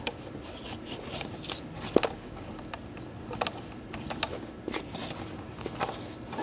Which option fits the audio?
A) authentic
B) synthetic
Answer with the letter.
A